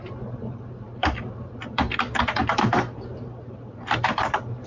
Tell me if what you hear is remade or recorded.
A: remade